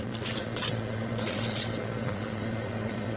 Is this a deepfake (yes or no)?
yes